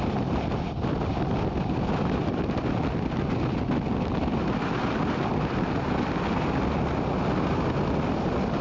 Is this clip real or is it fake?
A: real